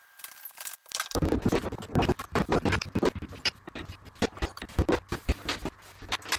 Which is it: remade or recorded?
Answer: remade